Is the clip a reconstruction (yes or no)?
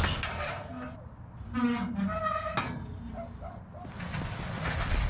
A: no